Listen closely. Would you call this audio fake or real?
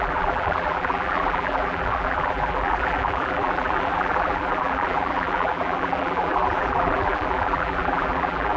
fake